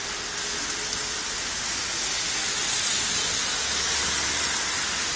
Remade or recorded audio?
recorded